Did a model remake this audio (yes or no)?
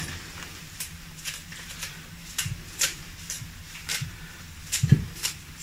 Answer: yes